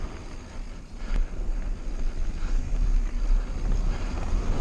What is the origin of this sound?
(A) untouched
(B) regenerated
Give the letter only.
A